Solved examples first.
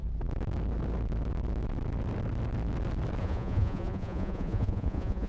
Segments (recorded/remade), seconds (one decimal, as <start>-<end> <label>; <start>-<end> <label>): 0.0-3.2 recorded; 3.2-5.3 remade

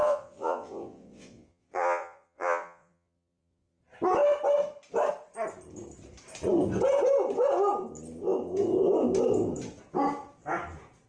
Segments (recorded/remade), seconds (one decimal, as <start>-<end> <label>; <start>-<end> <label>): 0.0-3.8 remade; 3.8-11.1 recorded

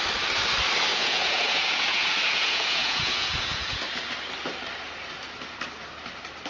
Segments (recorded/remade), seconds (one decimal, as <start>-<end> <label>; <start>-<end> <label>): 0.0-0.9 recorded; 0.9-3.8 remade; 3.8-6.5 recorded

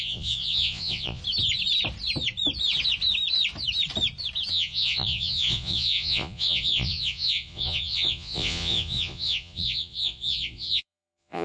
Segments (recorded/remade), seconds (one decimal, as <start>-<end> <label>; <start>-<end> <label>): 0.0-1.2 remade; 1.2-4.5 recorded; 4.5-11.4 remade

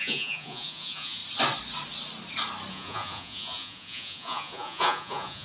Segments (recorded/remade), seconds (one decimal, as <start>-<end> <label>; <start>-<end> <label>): 0.0-1.2 remade; 1.2-2.7 recorded; 2.7-5.4 remade